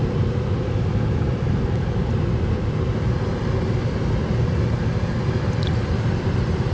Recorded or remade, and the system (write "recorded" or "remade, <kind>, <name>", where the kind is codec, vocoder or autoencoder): recorded